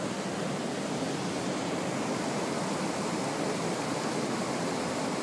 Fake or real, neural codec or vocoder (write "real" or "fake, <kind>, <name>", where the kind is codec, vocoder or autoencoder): real